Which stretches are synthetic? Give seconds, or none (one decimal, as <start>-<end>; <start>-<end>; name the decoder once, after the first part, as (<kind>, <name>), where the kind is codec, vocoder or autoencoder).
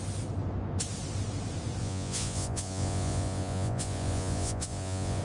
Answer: 1.8-5.2 (vocoder, Vocos)